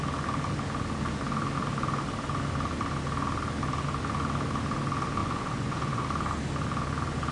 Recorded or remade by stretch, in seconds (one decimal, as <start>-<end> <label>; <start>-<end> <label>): 0.0-5.2 recorded; 5.2-6.0 remade; 6.0-7.3 recorded